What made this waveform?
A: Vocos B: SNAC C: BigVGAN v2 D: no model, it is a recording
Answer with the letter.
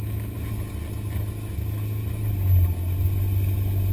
D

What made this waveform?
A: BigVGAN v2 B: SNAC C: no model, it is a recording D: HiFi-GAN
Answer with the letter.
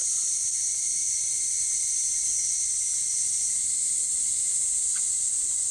C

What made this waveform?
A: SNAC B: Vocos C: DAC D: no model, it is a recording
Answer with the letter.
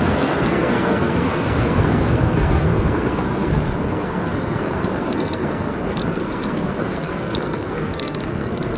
A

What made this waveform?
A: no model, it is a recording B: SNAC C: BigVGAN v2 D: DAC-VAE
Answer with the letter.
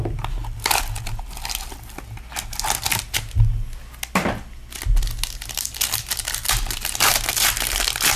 A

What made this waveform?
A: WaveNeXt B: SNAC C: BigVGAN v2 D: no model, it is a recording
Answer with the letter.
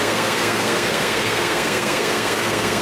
B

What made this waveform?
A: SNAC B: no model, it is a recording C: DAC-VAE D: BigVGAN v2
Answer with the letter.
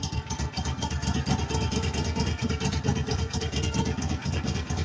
A